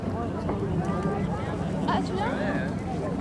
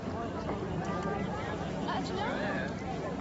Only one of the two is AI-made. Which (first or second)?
second